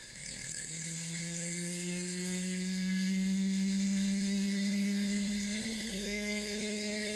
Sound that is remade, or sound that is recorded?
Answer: remade